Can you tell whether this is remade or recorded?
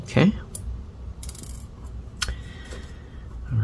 recorded